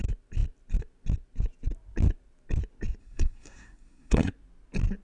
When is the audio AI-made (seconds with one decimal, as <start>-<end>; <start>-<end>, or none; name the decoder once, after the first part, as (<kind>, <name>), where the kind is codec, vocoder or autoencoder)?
3.0-4.3 (codec, SNAC)